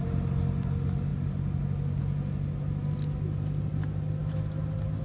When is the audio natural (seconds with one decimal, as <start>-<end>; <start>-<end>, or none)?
0.0-5.0